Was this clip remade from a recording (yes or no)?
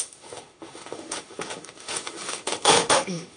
yes